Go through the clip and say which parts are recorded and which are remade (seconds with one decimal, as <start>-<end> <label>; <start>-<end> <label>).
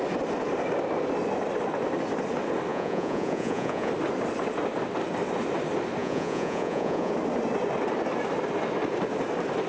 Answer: 0.0-2.7 recorded; 2.7-3.9 remade; 3.9-6.0 recorded; 6.0-7.1 remade; 7.1-9.7 recorded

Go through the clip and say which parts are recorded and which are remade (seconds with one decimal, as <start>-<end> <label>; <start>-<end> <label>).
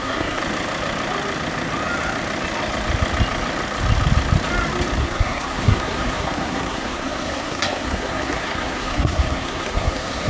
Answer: 0.0-0.4 remade; 0.4-5.0 recorded; 5.0-10.3 remade